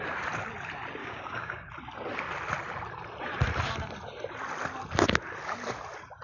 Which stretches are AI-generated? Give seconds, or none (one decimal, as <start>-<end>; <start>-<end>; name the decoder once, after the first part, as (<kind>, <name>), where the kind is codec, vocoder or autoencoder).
1.0-1.7 (codec, DAC)